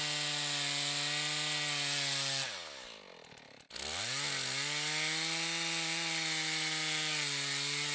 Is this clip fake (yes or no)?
no